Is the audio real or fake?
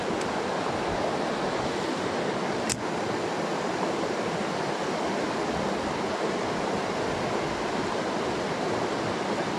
real